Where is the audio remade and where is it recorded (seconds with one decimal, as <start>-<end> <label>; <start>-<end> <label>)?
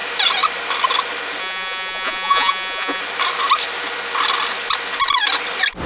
0.0-1.4 recorded; 1.4-3.0 remade; 3.0-5.9 recorded